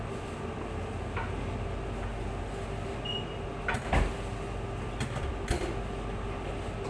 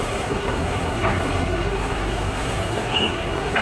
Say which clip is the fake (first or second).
second